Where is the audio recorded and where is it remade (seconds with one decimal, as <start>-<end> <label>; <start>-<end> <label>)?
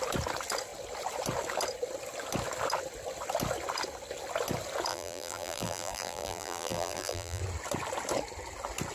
0.0-4.9 recorded; 4.9-7.4 remade; 7.4-8.9 recorded